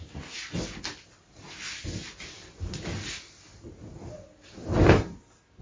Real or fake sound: real